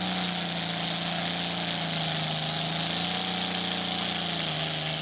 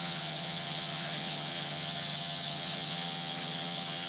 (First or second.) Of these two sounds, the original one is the first